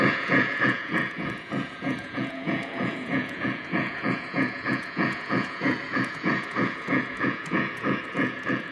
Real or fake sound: fake